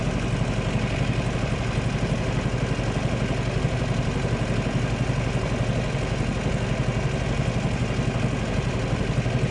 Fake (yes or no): no